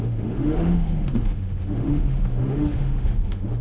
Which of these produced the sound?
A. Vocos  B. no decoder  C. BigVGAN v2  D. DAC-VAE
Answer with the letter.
D